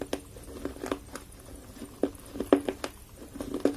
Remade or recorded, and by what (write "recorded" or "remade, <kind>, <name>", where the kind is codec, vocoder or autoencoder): recorded